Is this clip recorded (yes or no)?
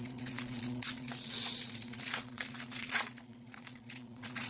no